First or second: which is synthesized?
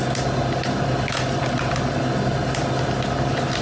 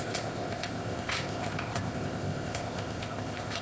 second